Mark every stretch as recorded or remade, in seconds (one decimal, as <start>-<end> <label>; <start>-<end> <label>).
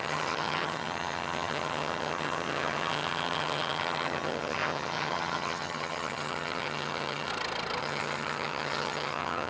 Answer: 0.0-7.3 remade; 7.3-7.8 recorded; 7.8-9.5 remade